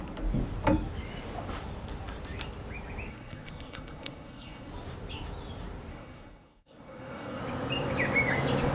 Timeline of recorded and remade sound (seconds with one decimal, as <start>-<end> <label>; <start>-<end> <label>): 0.0-3.1 recorded; 3.1-4.7 remade; 4.7-5.9 recorded; 5.9-7.4 remade; 7.4-8.7 recorded